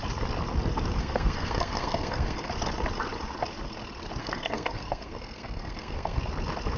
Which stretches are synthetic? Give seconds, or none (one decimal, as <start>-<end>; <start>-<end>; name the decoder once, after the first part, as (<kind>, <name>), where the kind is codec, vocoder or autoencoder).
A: 1.0-2.5 (codec, SNAC); 4.2-6.2